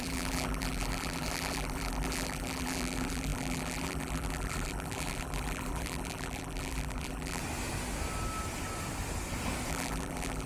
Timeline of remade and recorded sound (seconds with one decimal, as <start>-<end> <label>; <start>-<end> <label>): 0.0-7.4 remade; 7.4-9.7 recorded; 9.7-10.5 remade

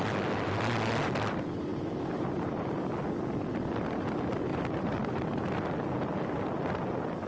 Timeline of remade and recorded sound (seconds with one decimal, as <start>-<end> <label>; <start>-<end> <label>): 0.0-1.7 recorded; 1.7-2.8 remade; 2.8-4.5 recorded; 4.5-5.4 remade; 5.4-7.3 recorded

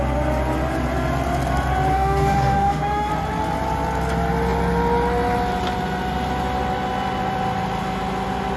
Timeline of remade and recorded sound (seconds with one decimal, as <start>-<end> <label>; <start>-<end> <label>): 0.0-1.9 recorded; 1.9-3.1 remade; 3.1-8.6 recorded

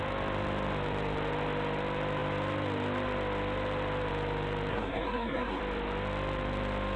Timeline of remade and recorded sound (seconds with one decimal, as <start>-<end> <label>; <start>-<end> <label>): 0.0-4.7 recorded; 4.7-5.6 remade; 5.6-7.0 recorded

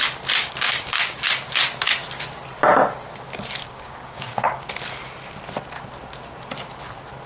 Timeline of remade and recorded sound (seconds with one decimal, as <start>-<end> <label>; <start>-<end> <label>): 0.0-0.4 recorded; 0.4-1.0 remade; 1.0-3.6 recorded; 3.6-4.7 remade; 4.7-7.3 recorded